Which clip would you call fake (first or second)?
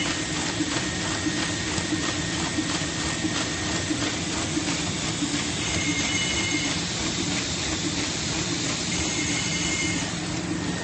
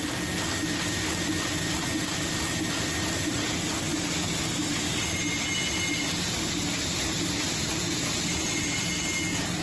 first